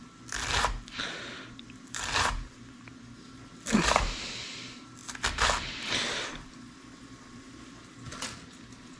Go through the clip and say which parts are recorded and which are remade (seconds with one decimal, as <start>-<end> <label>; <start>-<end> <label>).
0.0-9.0 recorded

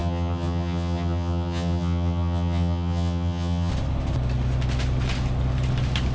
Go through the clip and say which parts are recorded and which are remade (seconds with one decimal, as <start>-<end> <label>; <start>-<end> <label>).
0.0-3.7 remade; 3.7-6.1 recorded

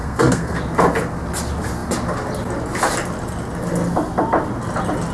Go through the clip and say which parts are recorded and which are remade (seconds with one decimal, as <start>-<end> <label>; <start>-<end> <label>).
0.0-0.6 remade; 0.6-5.1 recorded

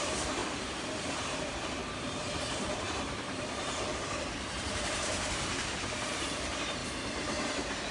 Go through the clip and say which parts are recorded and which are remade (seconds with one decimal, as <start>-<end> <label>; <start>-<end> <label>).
0.0-7.9 remade

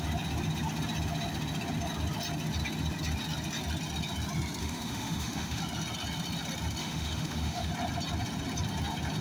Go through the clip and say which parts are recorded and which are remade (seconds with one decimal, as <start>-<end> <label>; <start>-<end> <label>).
0.0-4.6 recorded; 4.6-5.6 remade; 5.6-6.8 recorded; 6.8-7.7 remade; 7.7-9.2 recorded

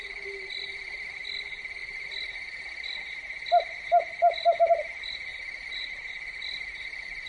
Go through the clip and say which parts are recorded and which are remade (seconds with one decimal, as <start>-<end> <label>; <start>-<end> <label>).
0.0-5.3 recorded; 5.3-6.1 remade; 6.1-7.3 recorded

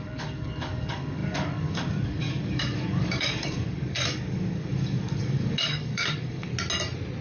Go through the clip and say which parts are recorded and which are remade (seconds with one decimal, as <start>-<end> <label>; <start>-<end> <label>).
0.0-6.5 remade; 6.5-7.2 recorded

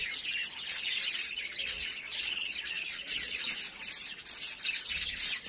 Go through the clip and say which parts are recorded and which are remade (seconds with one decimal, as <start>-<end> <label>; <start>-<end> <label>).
0.0-1.6 recorded; 1.6-3.5 remade; 3.5-5.5 recorded